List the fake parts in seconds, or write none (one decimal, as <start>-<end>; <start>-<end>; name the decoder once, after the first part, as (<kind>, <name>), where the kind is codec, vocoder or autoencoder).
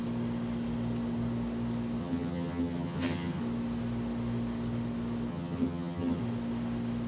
2.0-3.4 (vocoder, HiFi-GAN); 5.3-6.2